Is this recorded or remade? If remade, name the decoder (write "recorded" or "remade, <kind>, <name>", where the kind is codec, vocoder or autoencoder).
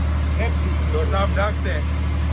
recorded